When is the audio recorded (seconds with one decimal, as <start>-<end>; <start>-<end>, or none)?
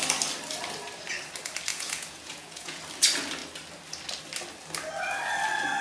0.0-1.7; 2.8-5.8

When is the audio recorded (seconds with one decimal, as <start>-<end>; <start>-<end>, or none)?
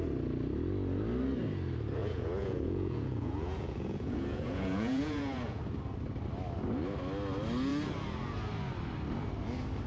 0.0-2.0; 5.6-9.9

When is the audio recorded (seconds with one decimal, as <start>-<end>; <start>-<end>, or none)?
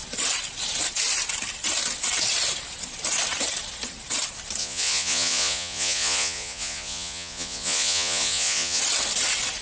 0.0-4.6; 8.8-9.6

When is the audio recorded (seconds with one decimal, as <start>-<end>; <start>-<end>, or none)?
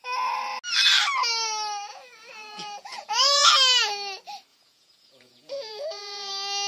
0.0-1.9; 3.5-4.5; 6.3-6.7